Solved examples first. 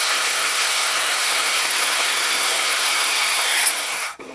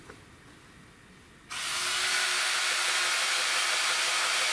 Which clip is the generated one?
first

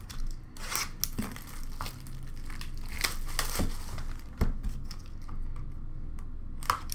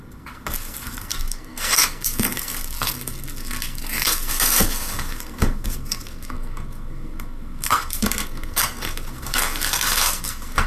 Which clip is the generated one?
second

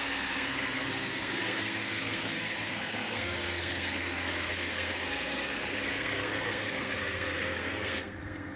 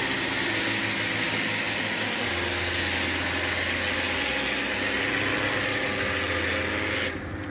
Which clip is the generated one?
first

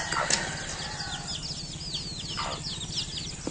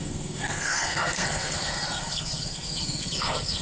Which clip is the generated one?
second